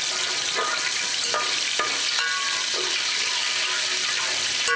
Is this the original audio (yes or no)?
yes